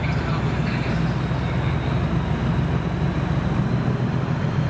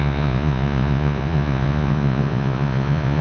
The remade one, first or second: second